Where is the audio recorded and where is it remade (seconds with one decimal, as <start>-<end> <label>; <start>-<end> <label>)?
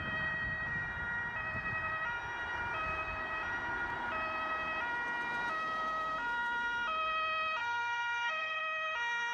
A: 0.0-7.6 recorded; 7.6-8.6 remade; 8.6-9.3 recorded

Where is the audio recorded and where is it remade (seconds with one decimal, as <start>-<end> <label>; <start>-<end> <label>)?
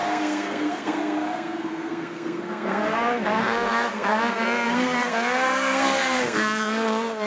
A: 0.0-7.3 remade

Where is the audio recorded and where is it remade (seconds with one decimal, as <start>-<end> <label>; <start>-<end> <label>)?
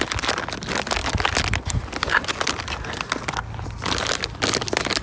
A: 0.0-5.0 recorded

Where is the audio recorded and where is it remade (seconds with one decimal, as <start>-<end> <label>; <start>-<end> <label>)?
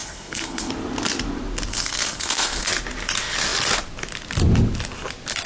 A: 0.0-0.7 remade; 0.7-1.7 recorded; 1.7-2.7 remade; 2.7-5.5 recorded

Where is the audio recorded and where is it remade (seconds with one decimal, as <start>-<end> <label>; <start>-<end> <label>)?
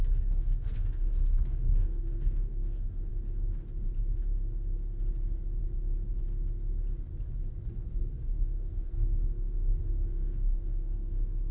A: 0.0-3.1 remade; 3.1-7.7 recorded; 7.7-11.5 remade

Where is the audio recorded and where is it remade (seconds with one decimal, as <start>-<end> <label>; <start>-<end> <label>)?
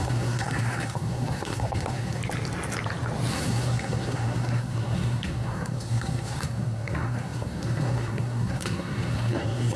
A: 0.0-2.2 remade; 2.2-3.3 recorded; 3.3-9.8 remade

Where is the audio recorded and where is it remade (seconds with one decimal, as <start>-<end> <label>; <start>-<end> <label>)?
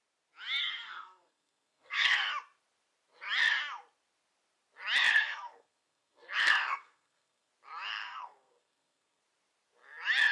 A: 0.0-0.6 recorded; 0.6-2.3 remade; 2.3-5.1 recorded; 5.1-7.5 remade; 7.5-7.9 recorded; 7.9-9.2 remade; 9.2-10.3 recorded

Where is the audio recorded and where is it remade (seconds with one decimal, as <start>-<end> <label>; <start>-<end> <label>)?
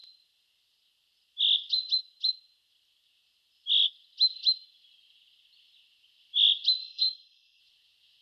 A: 0.0-6.8 recorded; 6.8-7.6 remade; 7.6-8.2 recorded